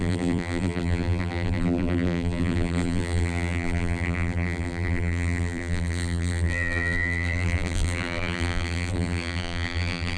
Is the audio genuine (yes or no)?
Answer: no